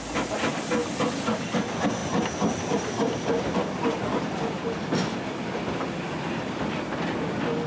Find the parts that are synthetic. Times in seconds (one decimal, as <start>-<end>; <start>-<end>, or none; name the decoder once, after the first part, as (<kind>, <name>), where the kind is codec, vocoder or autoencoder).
2.0-4.6 (vocoder, BigVGAN v2)